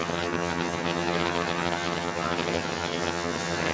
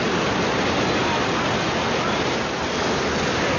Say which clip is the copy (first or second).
first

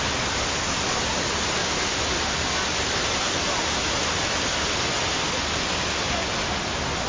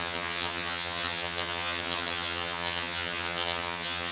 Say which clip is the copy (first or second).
second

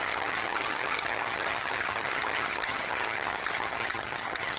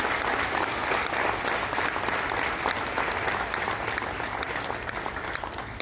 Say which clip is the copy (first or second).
first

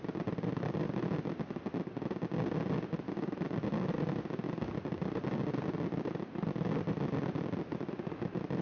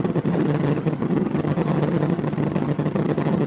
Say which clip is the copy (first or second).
second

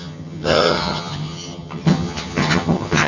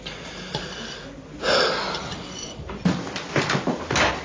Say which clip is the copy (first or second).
first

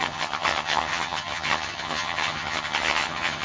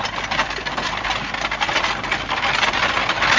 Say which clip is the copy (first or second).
first